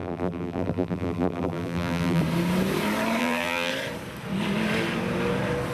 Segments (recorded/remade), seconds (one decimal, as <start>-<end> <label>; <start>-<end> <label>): 0.0-2.2 remade; 2.2-3.2 recorded; 3.2-3.7 remade; 3.7-5.7 recorded